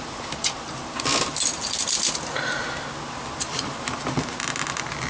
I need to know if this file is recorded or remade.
recorded